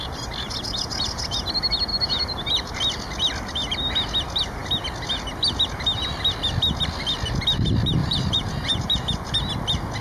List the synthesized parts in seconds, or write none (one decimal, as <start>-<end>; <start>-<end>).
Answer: 1.9-2.8; 8.0-9.5